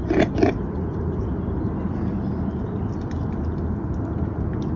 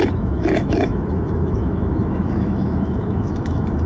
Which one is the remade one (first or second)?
second